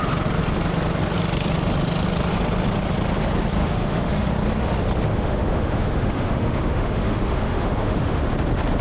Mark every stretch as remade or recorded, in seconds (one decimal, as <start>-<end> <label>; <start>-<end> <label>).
0.0-3.6 recorded; 3.6-4.3 remade; 4.3-5.1 recorded; 5.1-8.2 remade; 8.2-8.8 recorded